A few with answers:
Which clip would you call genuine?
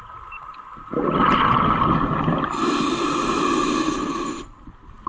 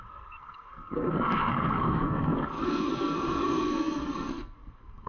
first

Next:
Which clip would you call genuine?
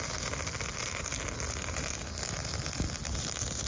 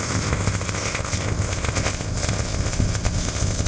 first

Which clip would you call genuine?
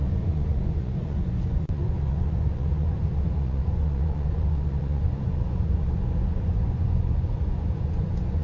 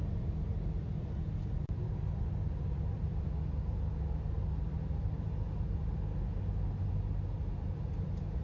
second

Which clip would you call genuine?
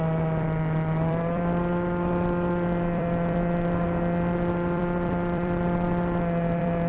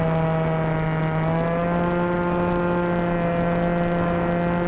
second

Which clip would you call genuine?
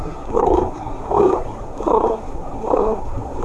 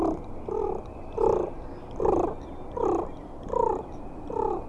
second